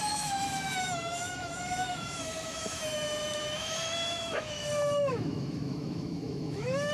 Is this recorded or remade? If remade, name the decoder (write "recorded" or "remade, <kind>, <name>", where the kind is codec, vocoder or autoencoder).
remade, autoencoder, DAC-VAE